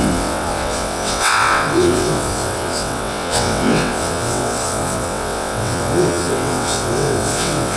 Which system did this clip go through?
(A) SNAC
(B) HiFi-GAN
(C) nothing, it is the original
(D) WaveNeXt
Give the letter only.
D